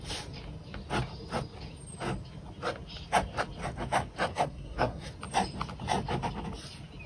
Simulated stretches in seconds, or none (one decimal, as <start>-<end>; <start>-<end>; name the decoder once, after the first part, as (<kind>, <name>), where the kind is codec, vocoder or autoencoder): 4.3-5.1 (codec, SNAC)